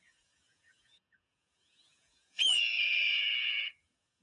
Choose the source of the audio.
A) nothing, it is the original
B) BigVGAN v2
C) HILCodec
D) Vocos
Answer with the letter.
D